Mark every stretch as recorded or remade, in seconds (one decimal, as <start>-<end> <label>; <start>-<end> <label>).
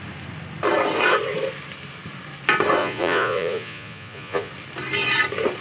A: 0.0-2.8 recorded; 2.8-4.5 remade; 4.5-5.6 recorded